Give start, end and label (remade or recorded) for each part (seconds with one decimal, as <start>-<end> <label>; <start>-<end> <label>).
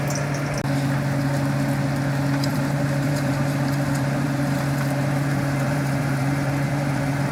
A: 0.0-2.5 recorded; 2.5-7.3 remade